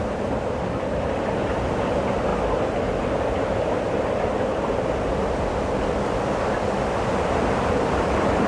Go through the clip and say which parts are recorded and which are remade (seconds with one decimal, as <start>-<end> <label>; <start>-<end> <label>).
0.0-8.5 recorded